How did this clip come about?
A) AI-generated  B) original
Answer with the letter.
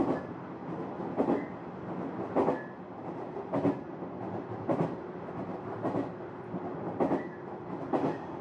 B